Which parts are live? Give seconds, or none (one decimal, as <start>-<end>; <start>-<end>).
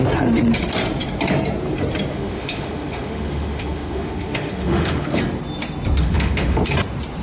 0.0-2.1; 5.2-6.0; 6.6-7.2